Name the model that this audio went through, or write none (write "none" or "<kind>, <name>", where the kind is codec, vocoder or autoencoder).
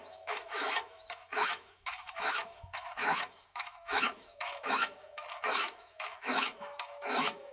autoencoder, DAC-VAE